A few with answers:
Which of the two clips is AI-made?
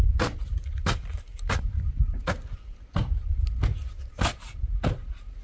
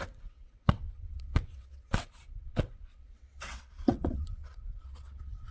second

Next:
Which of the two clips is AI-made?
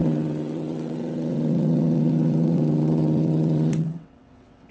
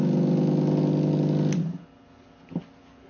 first